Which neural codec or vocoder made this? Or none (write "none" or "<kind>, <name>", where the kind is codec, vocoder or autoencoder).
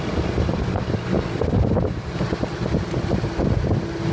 none